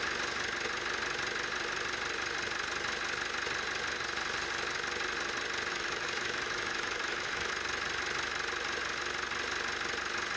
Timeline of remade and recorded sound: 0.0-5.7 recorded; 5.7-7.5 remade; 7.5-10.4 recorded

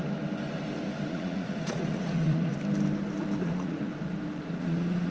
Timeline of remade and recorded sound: 0.0-1.1 recorded; 1.1-2.5 remade; 2.5-3.4 recorded; 3.4-3.9 remade; 3.9-4.5 recorded; 4.5-5.1 remade

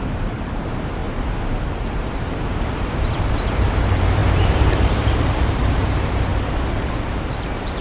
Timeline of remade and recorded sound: 0.0-6.3 remade; 6.3-6.9 recorded; 6.9-7.8 remade

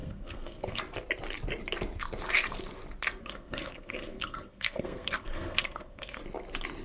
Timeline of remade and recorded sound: 0.0-0.8 remade; 0.8-3.2 recorded; 3.2-6.2 remade; 6.2-6.8 recorded

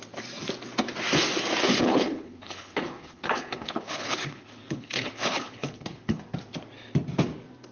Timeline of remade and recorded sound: 0.0-1.6 recorded; 1.6-6.2 remade; 6.2-7.7 recorded

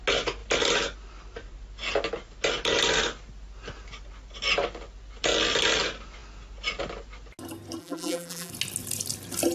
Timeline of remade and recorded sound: 0.0-7.8 recorded; 7.8-8.5 remade; 8.5-9.5 recorded

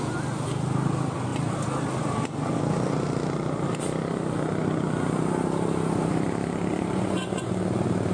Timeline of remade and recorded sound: 0.0-6.7 recorded; 6.7-7.5 remade; 7.5-8.1 recorded

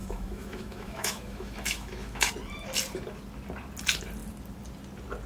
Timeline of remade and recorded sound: 0.0-2.3 remade; 2.3-5.3 recorded